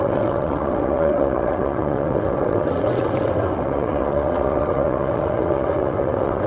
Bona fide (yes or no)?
no